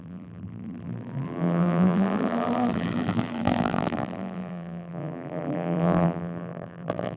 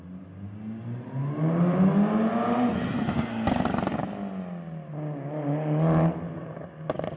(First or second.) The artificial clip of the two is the first